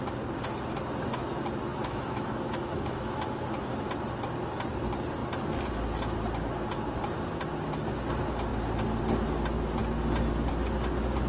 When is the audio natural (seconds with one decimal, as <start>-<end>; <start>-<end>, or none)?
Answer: 0.0-1.7; 3.2-11.3